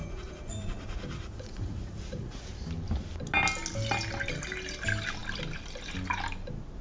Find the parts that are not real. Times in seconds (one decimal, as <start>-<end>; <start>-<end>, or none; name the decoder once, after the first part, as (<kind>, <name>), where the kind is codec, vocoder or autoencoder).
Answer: 0.0-2.4 (vocoder, Vocos)

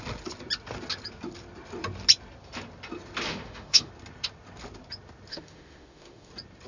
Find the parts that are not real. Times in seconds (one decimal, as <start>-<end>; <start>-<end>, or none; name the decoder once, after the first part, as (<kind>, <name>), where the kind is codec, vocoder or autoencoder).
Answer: 3.3-3.9 (autoencoder, DAC-VAE); 5.3-6.3

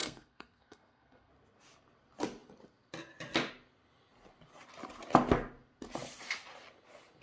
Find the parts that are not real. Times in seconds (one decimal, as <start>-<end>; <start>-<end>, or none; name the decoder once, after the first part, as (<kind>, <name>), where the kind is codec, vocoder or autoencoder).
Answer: 0.0-1.3 (codec, SNAC)

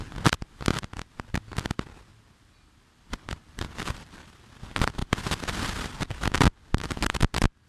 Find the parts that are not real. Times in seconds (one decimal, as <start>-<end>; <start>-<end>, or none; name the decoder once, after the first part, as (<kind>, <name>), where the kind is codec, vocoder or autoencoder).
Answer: 2.1-4.1 (vocoder, BigVGAN v2)

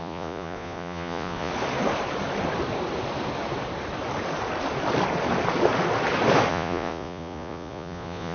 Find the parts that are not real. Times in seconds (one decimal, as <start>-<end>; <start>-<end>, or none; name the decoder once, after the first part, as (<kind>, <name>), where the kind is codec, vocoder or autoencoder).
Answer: 0.0-1.5 (vocoder, Vocos); 6.5-8.3

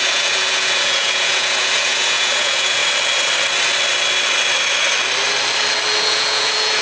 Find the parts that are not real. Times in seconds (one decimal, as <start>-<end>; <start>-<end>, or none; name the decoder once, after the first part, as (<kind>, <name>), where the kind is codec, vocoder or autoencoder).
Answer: 0.0-2.8 (vocoder, Vocos); 6.0-6.8